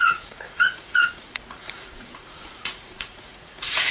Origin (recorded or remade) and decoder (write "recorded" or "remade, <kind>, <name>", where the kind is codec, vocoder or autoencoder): remade, vocoder, Vocos